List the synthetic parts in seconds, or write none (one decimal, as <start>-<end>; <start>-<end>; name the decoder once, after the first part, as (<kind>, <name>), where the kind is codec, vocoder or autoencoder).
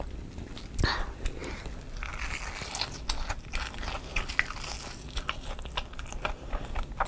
none